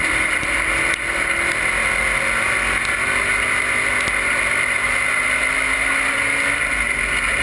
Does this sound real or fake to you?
real